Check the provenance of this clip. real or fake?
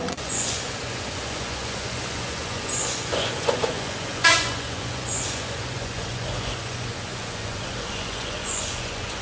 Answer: fake